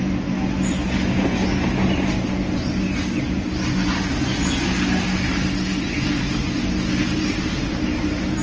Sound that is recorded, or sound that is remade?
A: recorded